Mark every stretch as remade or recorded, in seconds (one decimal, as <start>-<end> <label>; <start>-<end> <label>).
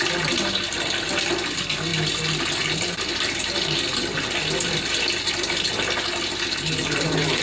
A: 0.0-7.4 recorded